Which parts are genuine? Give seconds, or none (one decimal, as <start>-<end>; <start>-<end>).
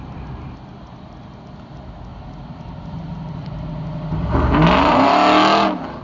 0.0-2.1; 3.7-6.0